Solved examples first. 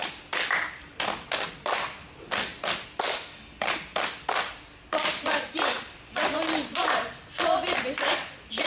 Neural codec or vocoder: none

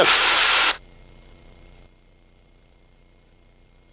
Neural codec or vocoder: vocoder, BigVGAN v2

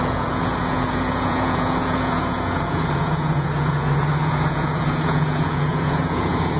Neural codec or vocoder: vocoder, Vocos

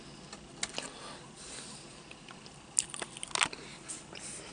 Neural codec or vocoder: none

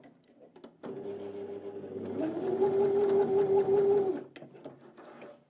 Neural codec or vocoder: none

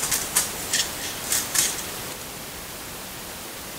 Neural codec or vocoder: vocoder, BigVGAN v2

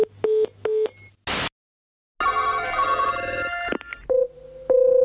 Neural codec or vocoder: none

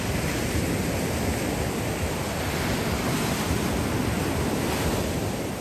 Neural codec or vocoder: none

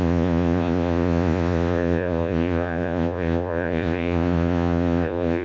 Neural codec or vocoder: vocoder, Vocos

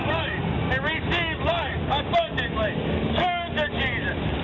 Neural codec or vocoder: none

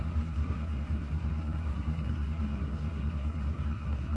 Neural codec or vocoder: codec, SNAC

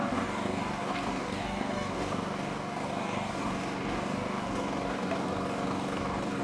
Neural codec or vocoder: codec, DAC